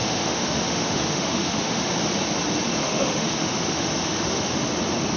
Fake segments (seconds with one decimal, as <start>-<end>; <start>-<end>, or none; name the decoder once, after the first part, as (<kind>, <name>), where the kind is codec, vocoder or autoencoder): 0.0-1.9 (autoencoder, DAC-VAE); 2.8-4.6